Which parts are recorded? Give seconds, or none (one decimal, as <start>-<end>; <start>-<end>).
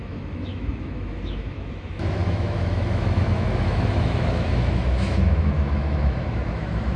none